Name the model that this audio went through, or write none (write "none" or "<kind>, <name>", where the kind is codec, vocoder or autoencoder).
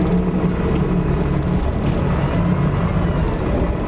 none